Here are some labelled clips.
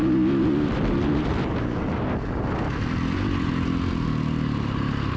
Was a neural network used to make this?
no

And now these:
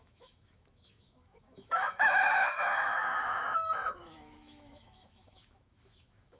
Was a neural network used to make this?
yes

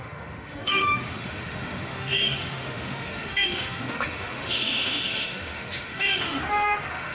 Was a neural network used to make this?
yes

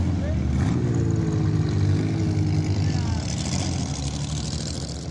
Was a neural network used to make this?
no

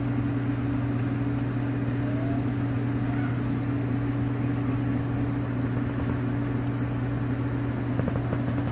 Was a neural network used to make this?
no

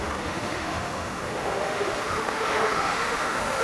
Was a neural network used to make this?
yes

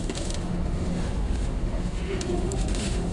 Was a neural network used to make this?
yes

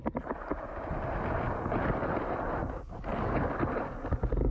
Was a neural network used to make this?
no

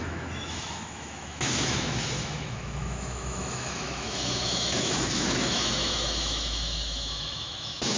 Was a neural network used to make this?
yes